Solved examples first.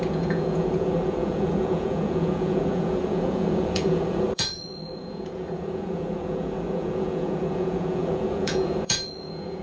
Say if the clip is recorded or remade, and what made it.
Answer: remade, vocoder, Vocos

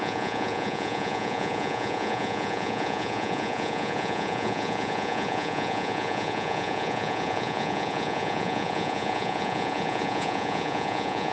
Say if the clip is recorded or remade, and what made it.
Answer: remade, vocoder, Vocos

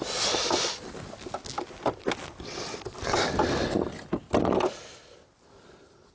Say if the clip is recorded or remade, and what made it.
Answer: recorded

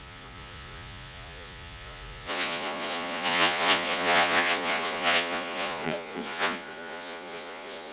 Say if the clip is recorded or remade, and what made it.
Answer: remade, vocoder, Vocos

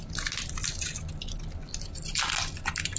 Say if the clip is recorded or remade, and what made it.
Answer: recorded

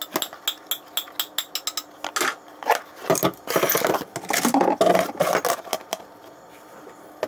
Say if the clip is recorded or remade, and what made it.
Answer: recorded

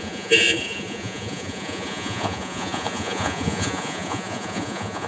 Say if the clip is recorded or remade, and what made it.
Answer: remade, vocoder, Vocos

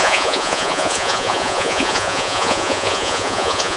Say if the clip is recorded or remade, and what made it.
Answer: remade, vocoder, Vocos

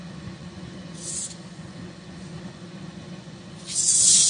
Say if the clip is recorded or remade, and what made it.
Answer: remade, vocoder, Vocos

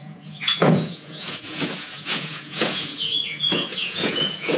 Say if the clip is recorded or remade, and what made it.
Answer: remade, vocoder, Vocos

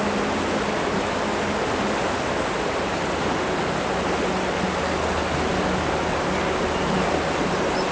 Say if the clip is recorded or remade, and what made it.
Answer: recorded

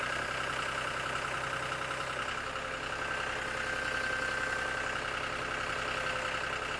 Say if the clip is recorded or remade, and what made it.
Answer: recorded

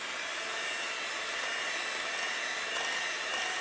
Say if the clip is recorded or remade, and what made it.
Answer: recorded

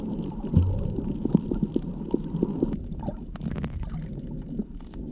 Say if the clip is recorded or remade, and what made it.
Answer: recorded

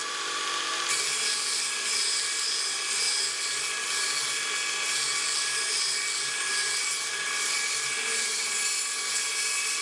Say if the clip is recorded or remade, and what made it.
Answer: recorded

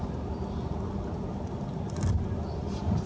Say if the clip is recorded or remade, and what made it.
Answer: recorded